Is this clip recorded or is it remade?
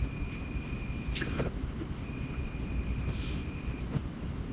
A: recorded